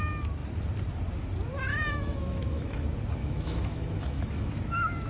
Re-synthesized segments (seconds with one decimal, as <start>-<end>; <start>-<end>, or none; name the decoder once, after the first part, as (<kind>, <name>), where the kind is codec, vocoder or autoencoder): 1.7-2.8 (autoencoder, DAC-VAE); 3.2-4.5